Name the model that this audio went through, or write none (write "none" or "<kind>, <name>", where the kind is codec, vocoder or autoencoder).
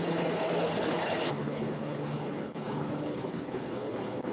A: codec, HILCodec